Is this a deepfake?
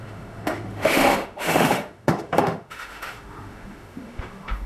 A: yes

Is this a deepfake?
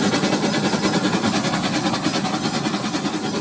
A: no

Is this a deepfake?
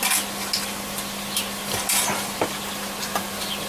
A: no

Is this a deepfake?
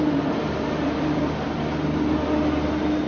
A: no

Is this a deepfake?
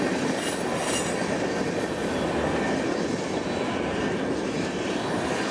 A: no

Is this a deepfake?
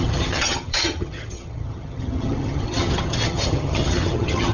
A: yes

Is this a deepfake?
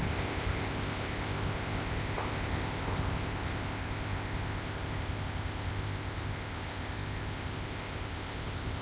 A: yes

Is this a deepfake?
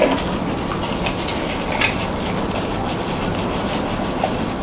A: no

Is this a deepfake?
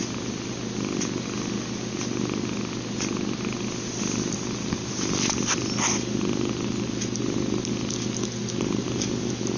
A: no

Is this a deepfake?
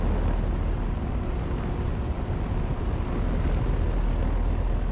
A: no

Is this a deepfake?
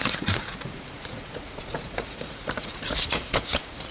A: yes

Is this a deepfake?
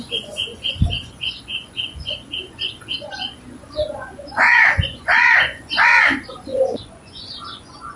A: yes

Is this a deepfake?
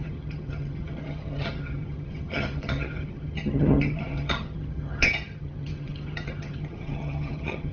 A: yes